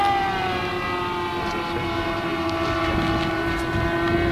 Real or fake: real